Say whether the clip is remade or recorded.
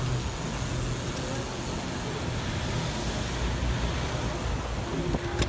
recorded